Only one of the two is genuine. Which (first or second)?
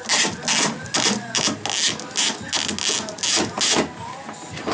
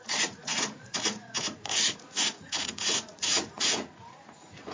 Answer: first